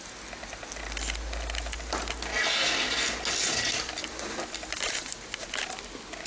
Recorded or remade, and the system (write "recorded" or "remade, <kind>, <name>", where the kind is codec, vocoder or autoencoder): recorded